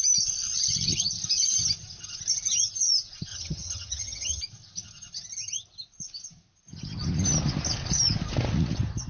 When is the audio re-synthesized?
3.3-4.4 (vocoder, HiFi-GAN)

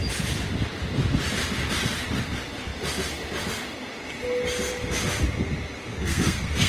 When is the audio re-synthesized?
5.9-6.7 (codec, SNAC)

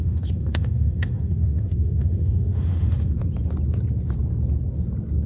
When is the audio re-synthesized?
0.0-3.2 (autoencoder, DAC-VAE)

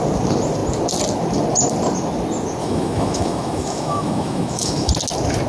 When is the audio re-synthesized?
2.6-4.9 (autoencoder, DAC-VAE)

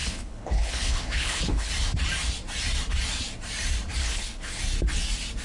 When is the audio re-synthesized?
0.0-1.7 (codec, HILCodec); 4.0-4.6